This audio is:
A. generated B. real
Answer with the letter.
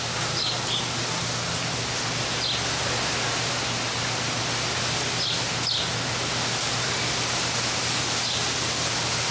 B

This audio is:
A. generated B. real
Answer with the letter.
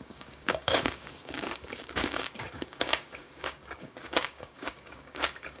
A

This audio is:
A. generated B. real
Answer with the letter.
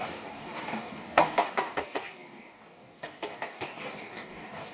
A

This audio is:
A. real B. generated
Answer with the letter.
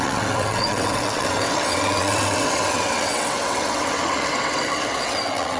B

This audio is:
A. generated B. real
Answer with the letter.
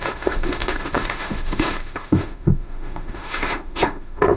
A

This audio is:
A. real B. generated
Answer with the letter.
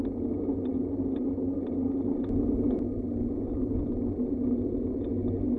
A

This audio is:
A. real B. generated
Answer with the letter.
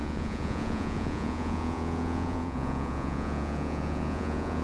B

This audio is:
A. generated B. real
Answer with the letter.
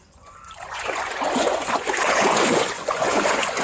A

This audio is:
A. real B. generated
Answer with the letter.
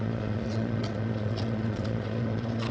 B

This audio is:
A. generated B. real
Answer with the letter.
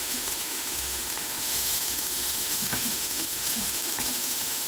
A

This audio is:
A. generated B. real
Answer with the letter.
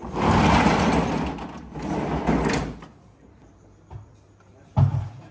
B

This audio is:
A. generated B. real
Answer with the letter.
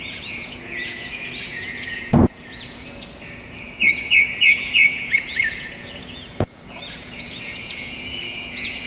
A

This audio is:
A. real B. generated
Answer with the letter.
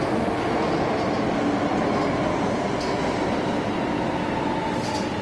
A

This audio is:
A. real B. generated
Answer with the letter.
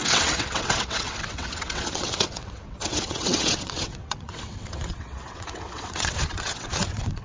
B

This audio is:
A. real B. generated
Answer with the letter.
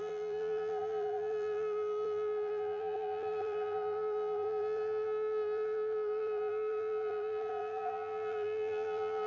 B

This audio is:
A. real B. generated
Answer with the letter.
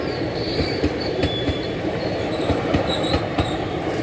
B